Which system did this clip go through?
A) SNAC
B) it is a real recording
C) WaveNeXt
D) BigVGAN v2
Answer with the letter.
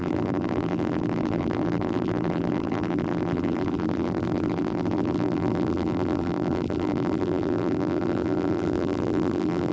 D